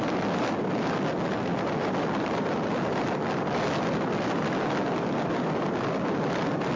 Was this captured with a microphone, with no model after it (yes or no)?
yes